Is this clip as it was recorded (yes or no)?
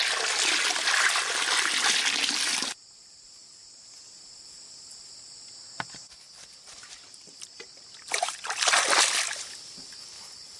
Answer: yes